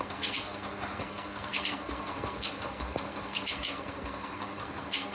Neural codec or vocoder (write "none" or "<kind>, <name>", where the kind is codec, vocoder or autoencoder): codec, SNAC